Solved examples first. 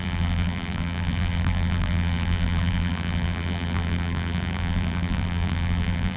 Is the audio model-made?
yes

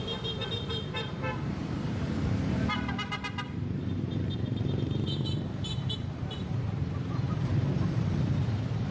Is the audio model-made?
yes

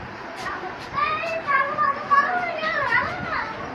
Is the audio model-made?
yes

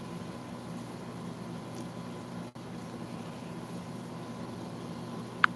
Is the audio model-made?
no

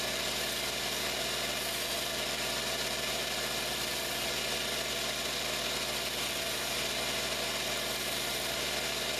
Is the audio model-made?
no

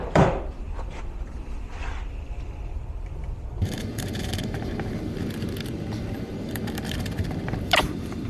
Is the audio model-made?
yes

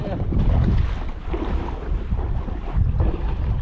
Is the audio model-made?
yes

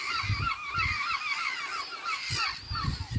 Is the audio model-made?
no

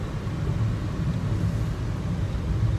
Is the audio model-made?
no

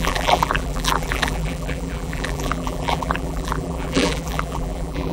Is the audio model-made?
yes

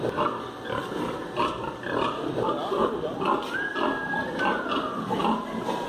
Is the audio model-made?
no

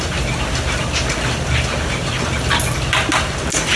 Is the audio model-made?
no